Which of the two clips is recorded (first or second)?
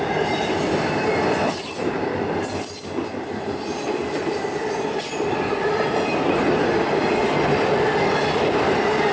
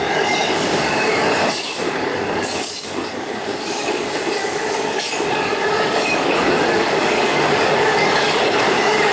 first